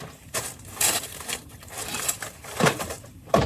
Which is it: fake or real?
fake